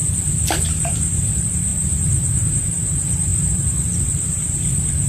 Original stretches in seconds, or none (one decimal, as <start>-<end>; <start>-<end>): 0.0-0.7